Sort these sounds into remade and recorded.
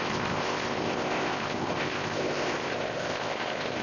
remade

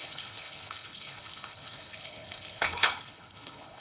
remade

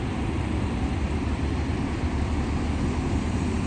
recorded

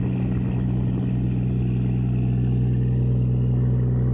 recorded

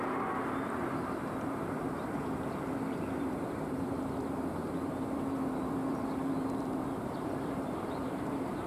remade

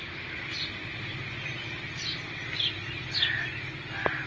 recorded